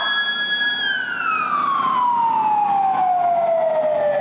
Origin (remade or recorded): recorded